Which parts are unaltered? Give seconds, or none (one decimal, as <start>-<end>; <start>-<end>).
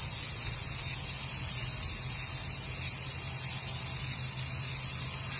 0.0-5.4